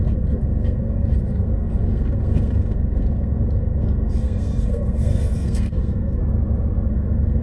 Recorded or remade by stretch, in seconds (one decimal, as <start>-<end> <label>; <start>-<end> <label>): 0.0-6.2 remade; 6.2-6.9 recorded; 6.9-7.4 remade